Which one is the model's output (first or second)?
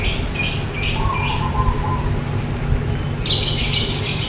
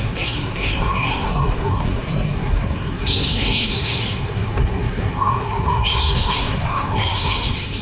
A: second